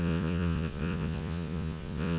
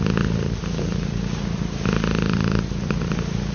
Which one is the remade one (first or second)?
first